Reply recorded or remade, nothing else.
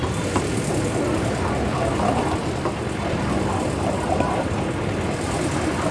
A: recorded